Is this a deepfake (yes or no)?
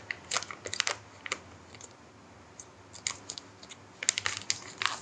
no